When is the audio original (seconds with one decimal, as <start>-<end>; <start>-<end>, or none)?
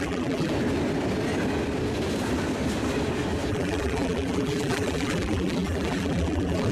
0.5-3.5